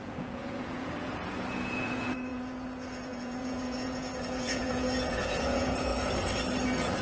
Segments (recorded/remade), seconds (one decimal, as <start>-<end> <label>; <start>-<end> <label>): 0.0-5.9 remade; 5.9-7.0 recorded